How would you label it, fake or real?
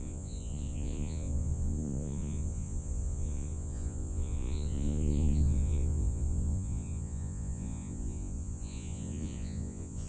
fake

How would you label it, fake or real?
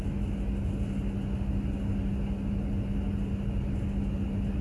real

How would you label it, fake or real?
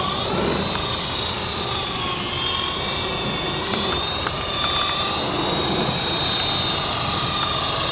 real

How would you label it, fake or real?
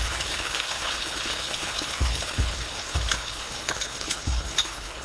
fake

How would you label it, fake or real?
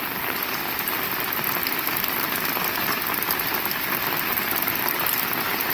real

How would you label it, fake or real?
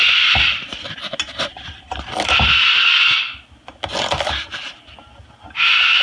real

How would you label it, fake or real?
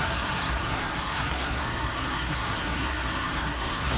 fake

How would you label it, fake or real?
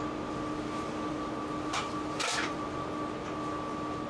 real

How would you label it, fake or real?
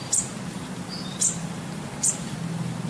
real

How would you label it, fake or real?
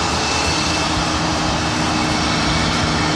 real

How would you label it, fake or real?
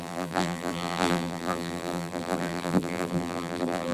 fake